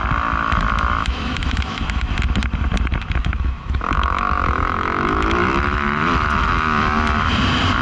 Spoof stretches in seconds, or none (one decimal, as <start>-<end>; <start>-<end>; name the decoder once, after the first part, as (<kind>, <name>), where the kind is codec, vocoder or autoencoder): 1.0-2.1 (autoencoder, DAC-VAE); 3.2-6.5